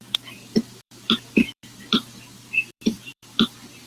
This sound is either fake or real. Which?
fake